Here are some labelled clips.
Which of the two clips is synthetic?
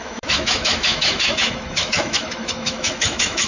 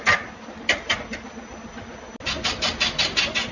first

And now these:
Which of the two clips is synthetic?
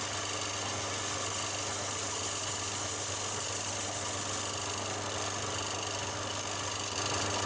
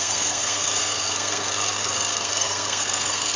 second